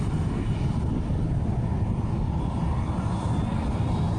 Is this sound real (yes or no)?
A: yes